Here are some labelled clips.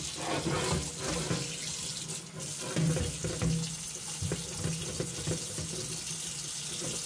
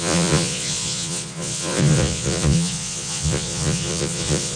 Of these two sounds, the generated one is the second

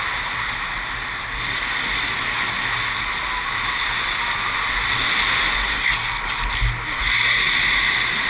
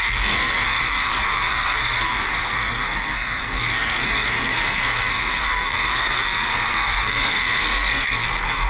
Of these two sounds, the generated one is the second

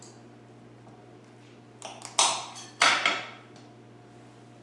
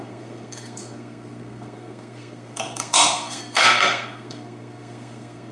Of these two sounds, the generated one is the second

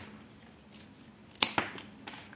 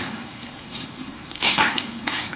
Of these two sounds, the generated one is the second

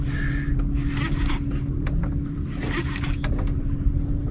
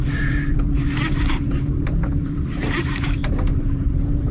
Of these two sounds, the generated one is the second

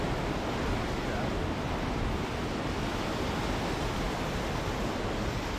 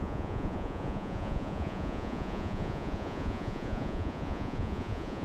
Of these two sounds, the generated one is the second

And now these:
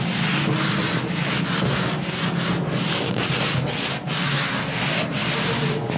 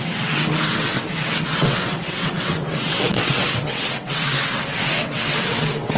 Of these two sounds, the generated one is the second